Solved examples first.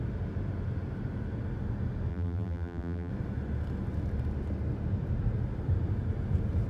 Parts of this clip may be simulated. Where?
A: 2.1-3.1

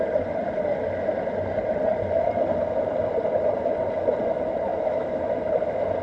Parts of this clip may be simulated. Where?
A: 4.7-5.5

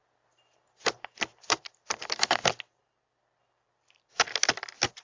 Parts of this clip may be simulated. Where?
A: 1.3-1.9